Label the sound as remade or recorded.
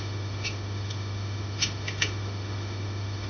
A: remade